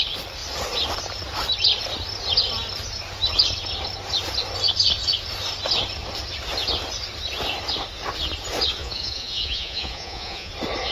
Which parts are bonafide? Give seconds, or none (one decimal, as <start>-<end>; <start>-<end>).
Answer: 0.0-8.8; 10.5-10.9